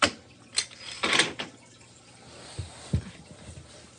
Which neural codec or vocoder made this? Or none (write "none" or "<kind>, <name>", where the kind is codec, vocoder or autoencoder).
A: none